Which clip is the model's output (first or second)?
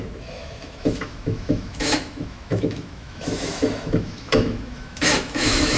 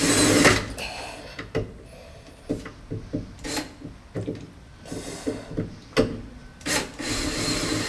first